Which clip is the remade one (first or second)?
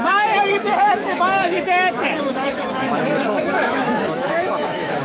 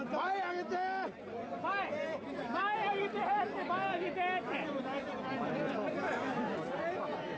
first